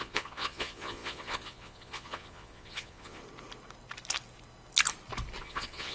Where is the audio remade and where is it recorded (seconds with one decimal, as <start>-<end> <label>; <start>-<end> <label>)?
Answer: 0.0-3.2 remade; 3.2-5.4 recorded; 5.4-5.9 remade